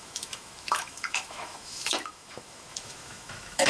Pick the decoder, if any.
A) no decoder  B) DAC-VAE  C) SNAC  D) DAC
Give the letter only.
B